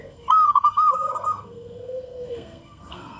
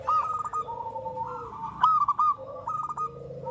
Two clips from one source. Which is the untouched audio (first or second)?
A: second